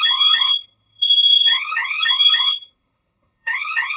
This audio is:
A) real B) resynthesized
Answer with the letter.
B